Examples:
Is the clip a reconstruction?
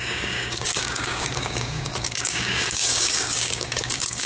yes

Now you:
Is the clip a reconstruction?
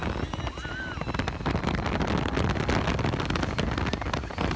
no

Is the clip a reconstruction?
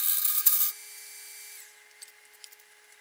no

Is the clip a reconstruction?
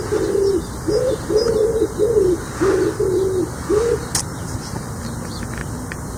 no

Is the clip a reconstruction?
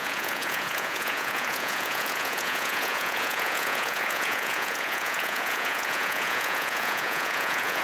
yes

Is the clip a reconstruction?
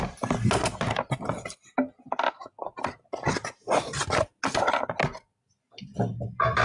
no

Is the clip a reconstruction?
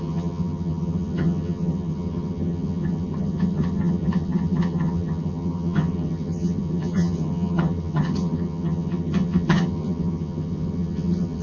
yes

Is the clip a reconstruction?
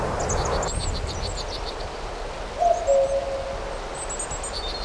no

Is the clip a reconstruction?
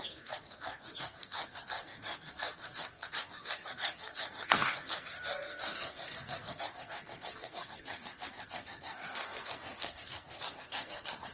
yes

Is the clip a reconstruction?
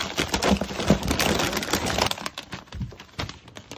no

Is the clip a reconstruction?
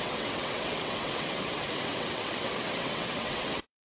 yes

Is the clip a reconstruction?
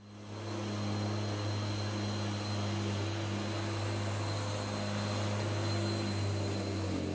no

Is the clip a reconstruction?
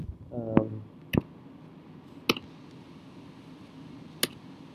no